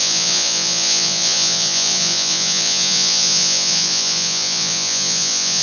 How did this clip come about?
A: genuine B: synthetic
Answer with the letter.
B